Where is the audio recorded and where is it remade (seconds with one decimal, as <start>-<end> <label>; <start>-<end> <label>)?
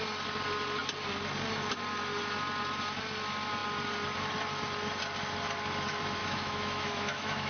0.0-6.2 recorded; 6.2-7.5 remade